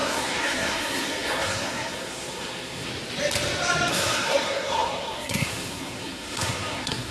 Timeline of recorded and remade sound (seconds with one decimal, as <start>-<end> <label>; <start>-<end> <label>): 0.0-2.9 remade; 2.9-3.9 recorded; 3.9-7.1 remade